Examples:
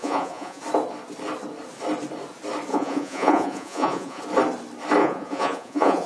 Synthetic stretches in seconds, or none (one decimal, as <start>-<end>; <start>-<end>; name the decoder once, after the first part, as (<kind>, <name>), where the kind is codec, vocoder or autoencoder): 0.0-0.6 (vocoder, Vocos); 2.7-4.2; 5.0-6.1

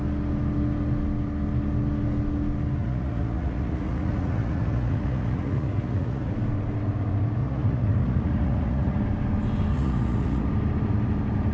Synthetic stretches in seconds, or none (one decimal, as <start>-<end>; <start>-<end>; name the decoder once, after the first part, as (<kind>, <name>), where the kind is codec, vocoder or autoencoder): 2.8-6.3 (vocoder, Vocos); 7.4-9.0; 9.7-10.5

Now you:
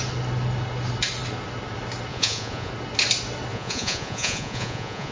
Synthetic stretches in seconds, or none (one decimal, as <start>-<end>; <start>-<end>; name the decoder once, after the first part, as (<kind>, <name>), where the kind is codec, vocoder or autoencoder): 2.1-2.7 (vocoder, Vocos); 3.5-5.1

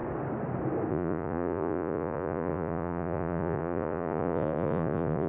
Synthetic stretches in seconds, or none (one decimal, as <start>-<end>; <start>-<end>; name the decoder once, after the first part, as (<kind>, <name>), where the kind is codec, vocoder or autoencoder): 0.9-5.3 (vocoder, Vocos)

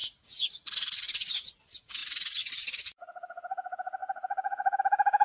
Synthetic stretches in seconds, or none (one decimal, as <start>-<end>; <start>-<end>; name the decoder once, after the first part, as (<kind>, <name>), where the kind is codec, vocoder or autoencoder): 0.0-1.3 (vocoder, Vocos); 2.0-2.5; 4.0-4.8